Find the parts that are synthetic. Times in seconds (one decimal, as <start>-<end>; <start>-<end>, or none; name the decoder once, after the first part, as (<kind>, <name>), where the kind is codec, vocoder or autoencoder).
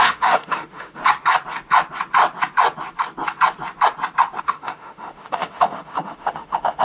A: 0.0-1.0 (autoencoder, DAC-VAE); 4.4-6.8